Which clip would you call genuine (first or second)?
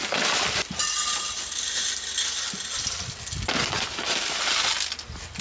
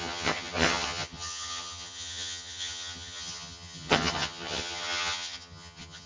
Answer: first